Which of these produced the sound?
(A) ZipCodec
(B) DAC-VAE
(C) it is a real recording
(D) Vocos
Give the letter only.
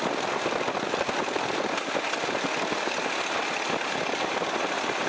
C